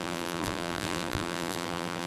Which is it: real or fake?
fake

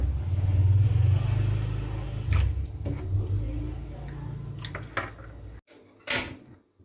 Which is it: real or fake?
real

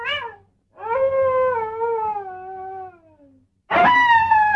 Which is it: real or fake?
real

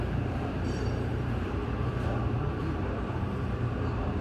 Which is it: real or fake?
fake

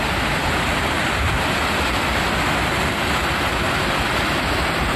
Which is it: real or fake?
real